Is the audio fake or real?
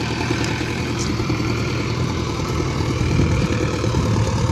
fake